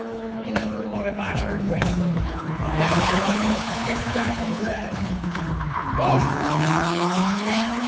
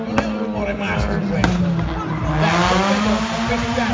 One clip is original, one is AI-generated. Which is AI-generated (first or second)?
first